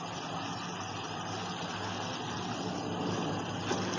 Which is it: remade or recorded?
recorded